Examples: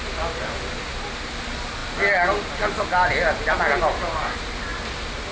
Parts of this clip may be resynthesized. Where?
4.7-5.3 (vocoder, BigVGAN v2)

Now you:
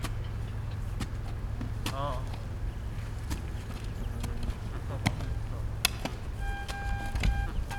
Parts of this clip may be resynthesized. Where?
none

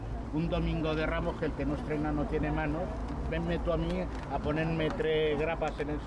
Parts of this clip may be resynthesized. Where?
none